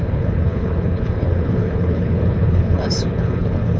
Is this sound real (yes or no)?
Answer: no